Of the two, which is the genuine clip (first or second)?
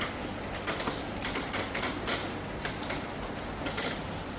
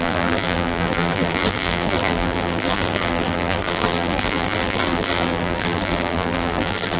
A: first